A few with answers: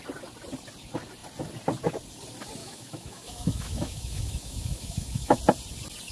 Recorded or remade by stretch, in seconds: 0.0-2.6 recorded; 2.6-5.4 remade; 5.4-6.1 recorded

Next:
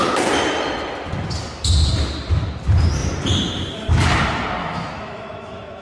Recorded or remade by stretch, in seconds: 0.0-4.6 recorded; 4.6-5.8 remade